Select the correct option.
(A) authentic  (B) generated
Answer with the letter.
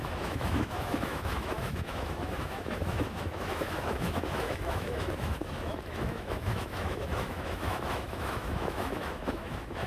B